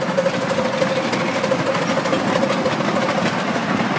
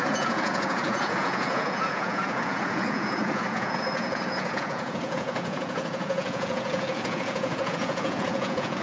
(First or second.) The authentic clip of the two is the first